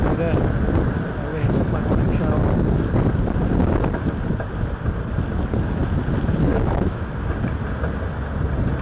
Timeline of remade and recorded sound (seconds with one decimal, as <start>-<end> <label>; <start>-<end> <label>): 0.0-1.3 recorded; 1.3-1.8 remade; 1.8-6.5 recorded; 6.5-7.1 remade; 7.1-8.8 recorded